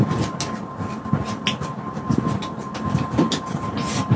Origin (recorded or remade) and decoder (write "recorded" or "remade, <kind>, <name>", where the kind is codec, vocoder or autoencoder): recorded